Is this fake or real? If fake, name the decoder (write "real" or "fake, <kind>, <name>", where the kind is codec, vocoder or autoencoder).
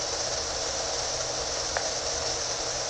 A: real